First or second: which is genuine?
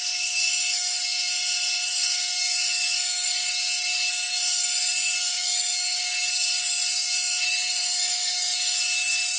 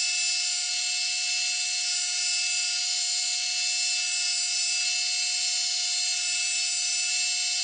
second